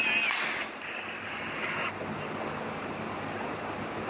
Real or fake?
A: real